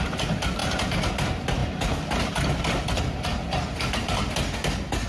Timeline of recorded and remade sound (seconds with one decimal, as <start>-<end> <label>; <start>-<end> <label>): 0.0-0.6 recorded; 0.6-1.1 remade; 1.1-5.1 recorded